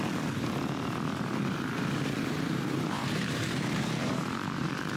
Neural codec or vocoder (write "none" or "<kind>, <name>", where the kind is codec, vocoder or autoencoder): vocoder, BigVGAN v2